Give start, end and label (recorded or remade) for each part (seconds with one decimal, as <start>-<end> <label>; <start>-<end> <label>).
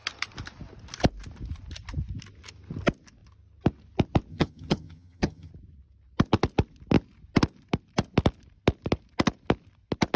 0.0-4.3 recorded; 4.3-5.5 remade; 5.5-10.2 recorded